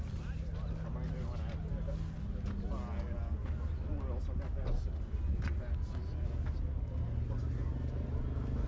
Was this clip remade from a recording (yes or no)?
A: no